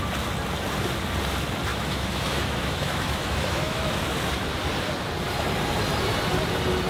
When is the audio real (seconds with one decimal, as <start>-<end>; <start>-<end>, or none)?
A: 0.0-1.7; 3.9-6.9